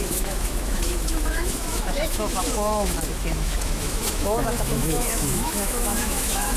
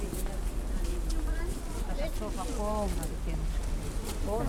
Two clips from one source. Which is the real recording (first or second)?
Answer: second